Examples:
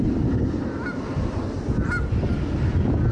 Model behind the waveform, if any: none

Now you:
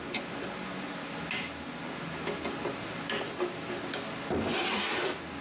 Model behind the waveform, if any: none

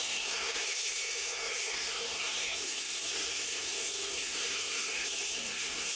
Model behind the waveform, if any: codec, SNAC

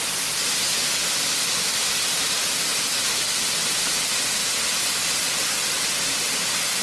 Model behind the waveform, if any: none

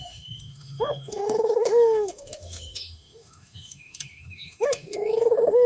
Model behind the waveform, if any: autoencoder, DAC-VAE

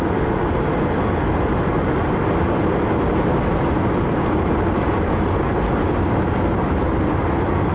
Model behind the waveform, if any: none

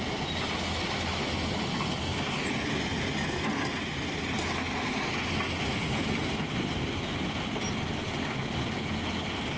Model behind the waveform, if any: none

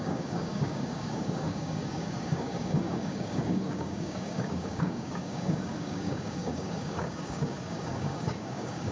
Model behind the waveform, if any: codec, DAC